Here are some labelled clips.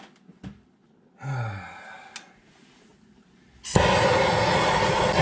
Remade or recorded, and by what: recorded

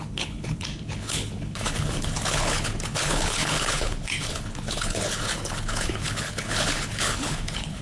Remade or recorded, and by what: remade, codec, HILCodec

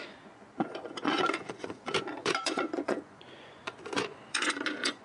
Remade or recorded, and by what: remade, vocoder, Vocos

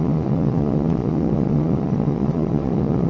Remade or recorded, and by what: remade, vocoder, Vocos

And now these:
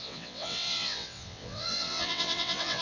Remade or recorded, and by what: remade, vocoder, WaveNeXt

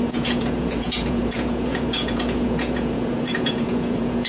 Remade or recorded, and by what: remade, vocoder, Vocos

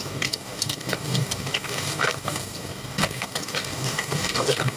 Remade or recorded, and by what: remade, codec, DAC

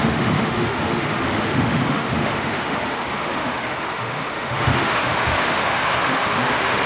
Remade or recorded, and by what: remade, autoencoder, DAC-VAE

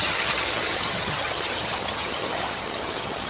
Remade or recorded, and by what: remade, vocoder, HiFi-GAN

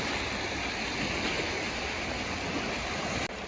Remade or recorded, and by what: recorded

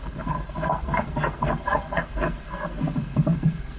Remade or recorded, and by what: remade, codec, SNAC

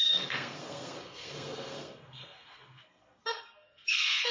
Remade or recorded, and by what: remade, codec, SNAC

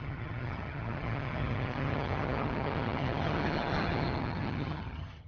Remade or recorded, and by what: remade, vocoder, HiFi-GAN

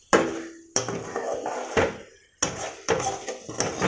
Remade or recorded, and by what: recorded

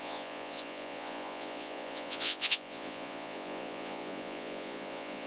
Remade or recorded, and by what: remade, vocoder, Vocos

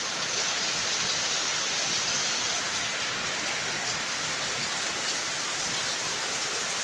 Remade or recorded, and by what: recorded